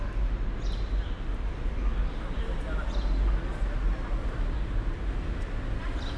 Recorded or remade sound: recorded